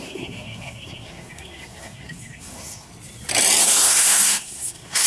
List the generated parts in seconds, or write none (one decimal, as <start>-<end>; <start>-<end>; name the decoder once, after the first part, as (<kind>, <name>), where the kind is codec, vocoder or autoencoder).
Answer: 0.0-2.9 (codec, SNAC); 3.6-5.1